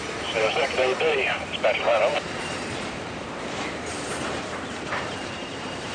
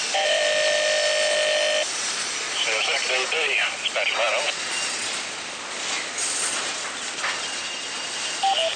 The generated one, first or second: first